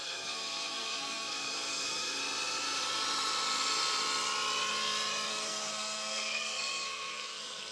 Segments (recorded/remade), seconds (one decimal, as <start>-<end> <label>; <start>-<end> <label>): 0.0-2.2 remade; 2.2-5.3 recorded; 5.3-7.7 remade